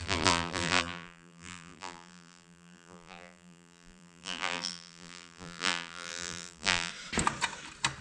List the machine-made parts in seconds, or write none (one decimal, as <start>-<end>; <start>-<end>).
0.0-6.9